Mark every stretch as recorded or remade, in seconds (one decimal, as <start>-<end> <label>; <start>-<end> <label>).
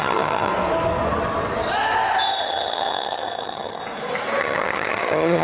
0.0-0.5 remade; 0.5-2.4 recorded; 2.4-3.8 remade; 3.8-4.4 recorded; 4.4-5.4 remade